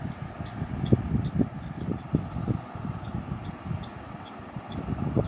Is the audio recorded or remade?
recorded